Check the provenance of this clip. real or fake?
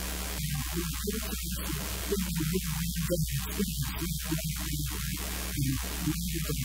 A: real